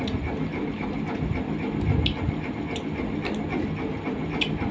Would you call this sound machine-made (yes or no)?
no